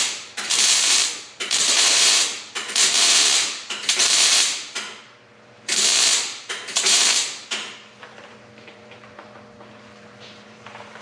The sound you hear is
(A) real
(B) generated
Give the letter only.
B